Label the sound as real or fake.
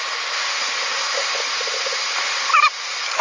fake